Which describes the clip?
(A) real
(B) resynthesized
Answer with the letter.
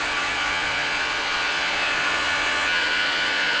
B